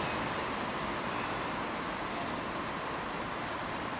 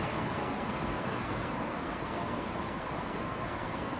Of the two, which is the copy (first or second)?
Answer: second